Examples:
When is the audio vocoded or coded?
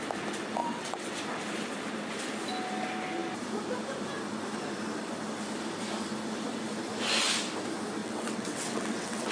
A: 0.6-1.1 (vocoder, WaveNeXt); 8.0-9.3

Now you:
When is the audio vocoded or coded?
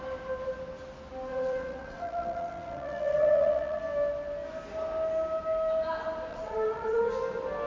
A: 1.3-3.8 (vocoder, WaveNeXt); 6.3-7.0